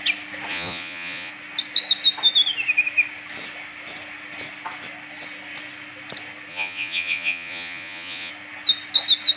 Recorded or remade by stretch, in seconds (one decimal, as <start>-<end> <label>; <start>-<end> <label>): 0.0-0.5 recorded; 0.5-1.3 remade; 1.3-6.5 recorded; 6.5-8.3 remade; 8.3-9.4 recorded